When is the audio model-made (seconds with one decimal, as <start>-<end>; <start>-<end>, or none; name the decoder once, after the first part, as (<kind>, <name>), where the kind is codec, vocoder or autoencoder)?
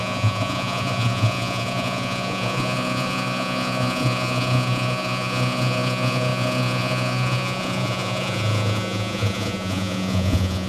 0.0-10.7 (vocoder, Vocos)